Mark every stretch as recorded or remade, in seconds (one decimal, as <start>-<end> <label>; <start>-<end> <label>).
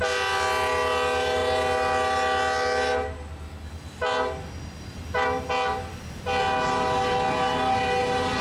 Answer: 0.0-8.4 recorded